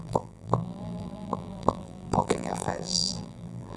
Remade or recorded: remade